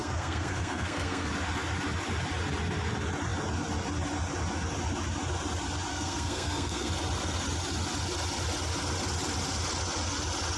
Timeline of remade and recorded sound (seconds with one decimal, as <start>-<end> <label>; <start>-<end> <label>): 0.0-1.3 remade; 1.3-5.9 recorded; 5.9-6.9 remade; 6.9-10.6 recorded